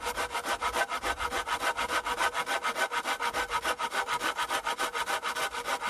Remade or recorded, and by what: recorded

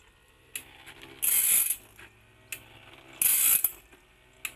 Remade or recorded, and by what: recorded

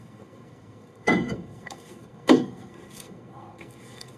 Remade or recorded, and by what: remade, codec, SNAC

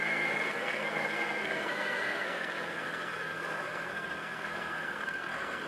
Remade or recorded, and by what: remade, codec, SNAC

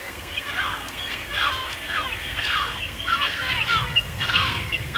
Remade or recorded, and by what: remade, codec, SNAC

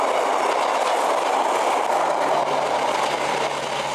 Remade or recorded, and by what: recorded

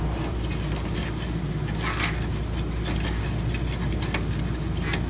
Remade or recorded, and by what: recorded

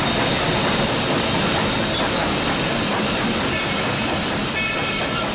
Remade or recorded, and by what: recorded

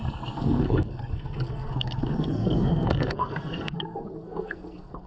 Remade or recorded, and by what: remade, codec, SNAC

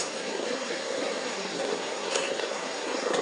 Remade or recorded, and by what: remade, codec, SNAC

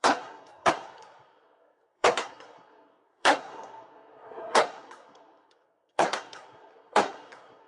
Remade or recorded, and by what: remade, codec, SNAC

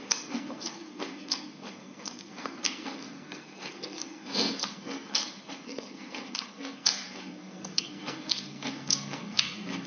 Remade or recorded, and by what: remade, codec, SNAC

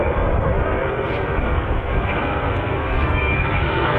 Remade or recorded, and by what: remade, codec, SNAC